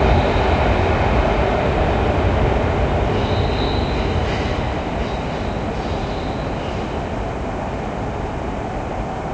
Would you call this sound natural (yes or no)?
yes